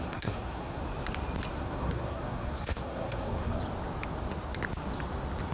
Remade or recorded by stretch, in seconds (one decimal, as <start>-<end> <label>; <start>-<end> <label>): 0.0-0.8 remade; 0.8-1.5 recorded; 1.5-3.6 remade; 3.6-5.5 recorded